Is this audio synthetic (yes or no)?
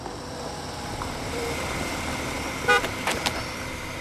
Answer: yes